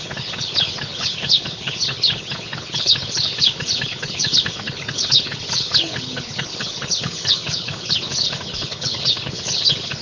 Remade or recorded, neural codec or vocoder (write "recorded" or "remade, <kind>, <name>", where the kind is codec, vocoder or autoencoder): remade, codec, HILCodec